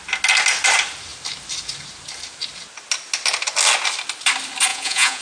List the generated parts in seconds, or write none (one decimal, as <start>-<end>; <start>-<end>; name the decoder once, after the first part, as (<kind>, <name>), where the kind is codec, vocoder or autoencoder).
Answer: 4.7-5.2 (vocoder, Vocos)